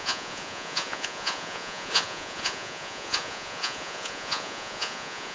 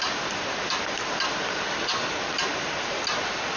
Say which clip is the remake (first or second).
first